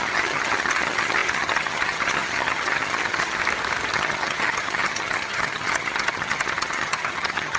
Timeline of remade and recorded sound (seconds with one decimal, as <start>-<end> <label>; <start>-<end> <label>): 0.0-3.4 remade; 3.4-3.9 recorded; 3.9-7.6 remade